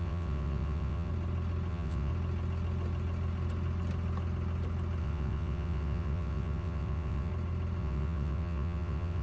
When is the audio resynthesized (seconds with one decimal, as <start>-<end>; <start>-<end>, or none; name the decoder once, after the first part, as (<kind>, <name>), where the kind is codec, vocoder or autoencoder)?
0.0-1.1 (vocoder, WaveNeXt); 1.7-2.1; 5.0-7.3; 7.8-9.2